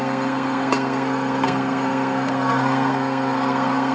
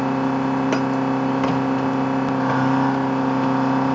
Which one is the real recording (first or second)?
second